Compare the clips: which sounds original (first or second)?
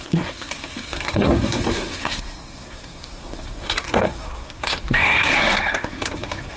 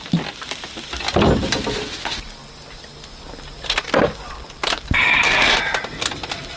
second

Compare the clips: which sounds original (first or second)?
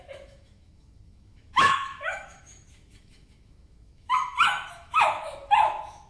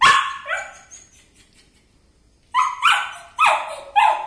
second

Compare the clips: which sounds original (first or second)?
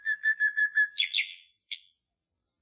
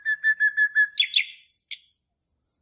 second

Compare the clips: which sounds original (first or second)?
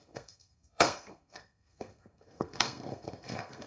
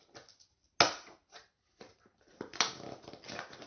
second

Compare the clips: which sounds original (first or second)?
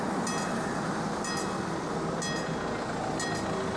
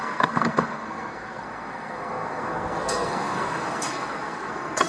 first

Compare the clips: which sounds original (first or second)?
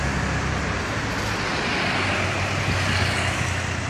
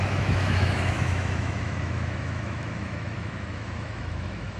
first